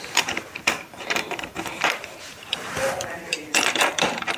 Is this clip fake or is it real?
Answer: fake